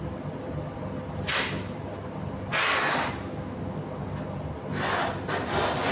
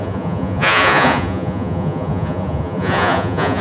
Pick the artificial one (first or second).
second